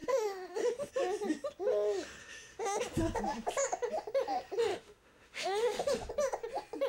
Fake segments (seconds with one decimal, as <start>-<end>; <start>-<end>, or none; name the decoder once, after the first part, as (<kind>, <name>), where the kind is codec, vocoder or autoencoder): 0.0-0.9 (autoencoder, DAC-VAE); 2.2-2.8; 4.7-6.1